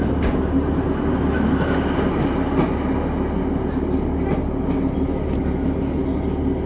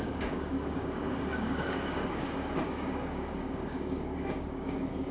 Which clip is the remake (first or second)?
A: second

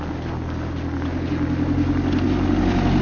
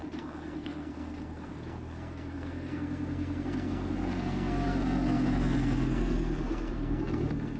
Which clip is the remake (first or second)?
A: second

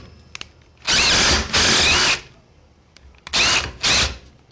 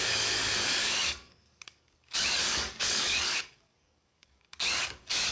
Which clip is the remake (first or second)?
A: second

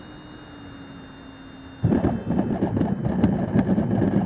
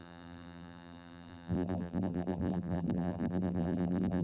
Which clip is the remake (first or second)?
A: second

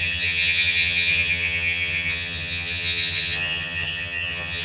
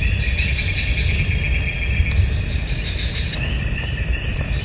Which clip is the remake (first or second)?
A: first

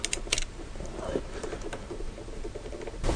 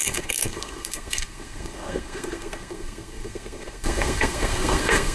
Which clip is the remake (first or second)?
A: second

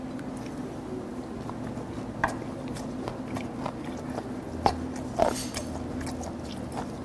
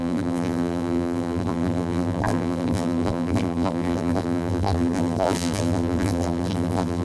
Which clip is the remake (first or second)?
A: second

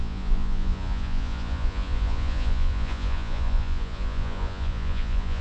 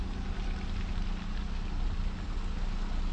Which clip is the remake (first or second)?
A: first